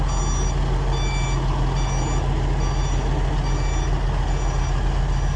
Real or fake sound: real